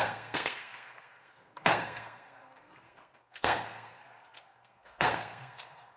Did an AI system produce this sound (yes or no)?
yes